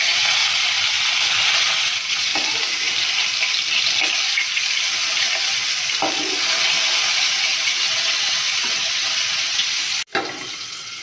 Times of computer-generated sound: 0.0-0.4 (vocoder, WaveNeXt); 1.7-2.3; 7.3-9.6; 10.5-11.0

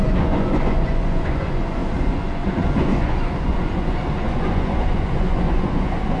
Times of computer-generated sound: 0.0-6.2 (vocoder, Vocos)

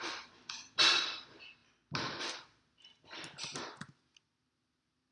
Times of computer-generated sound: none

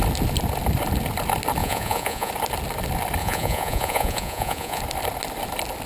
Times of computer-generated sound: 1.6-2.3 (vocoder, Vocos); 3.2-4.8

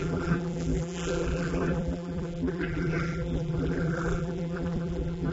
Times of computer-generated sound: 0.0-5.3 (vocoder, BigVGAN v2)

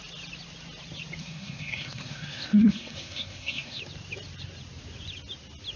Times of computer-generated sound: 1.2-3.8 (codec, SNAC)

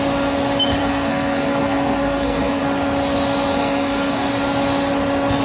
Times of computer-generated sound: 0.8-2.6 (codec, SNAC); 3.5-4.3